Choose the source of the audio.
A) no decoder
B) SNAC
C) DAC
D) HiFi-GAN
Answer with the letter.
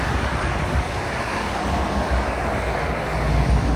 C